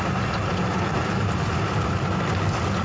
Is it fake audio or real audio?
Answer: real